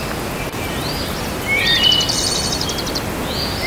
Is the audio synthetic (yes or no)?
no